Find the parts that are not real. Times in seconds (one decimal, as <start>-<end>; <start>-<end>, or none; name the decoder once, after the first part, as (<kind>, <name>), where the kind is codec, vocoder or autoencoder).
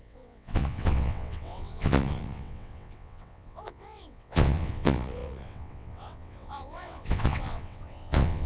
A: 0.0-8.5 (vocoder, WaveNeXt)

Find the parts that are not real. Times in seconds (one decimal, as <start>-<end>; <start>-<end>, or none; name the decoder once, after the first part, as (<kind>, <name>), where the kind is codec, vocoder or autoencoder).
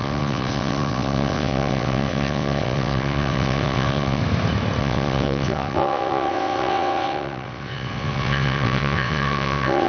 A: 0.0-4.2 (vocoder, WaveNeXt); 4.8-9.9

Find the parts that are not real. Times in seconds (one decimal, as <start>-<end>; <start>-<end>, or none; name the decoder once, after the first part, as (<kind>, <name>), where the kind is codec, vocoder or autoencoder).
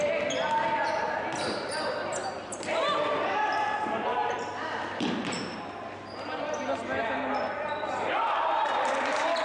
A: none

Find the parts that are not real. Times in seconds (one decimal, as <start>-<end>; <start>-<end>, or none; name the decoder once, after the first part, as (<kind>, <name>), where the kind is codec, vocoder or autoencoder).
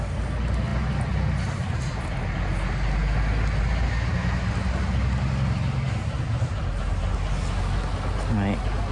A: none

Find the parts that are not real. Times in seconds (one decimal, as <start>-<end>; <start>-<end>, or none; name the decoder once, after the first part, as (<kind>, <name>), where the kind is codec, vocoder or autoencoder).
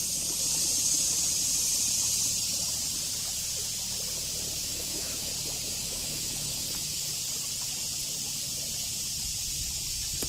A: 4.6-5.3 (autoencoder, DAC-VAE); 5.8-7.0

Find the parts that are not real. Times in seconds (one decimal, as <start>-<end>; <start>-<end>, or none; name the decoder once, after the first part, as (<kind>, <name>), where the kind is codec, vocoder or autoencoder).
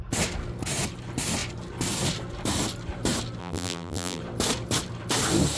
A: 3.4-4.2 (vocoder, BigVGAN v2)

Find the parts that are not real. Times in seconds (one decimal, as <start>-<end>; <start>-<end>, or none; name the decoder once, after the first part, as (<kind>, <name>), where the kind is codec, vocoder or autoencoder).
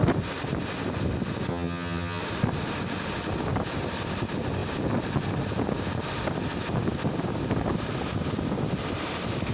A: 1.5-2.2 (vocoder, HiFi-GAN)